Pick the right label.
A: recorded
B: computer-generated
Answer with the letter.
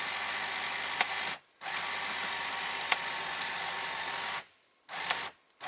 A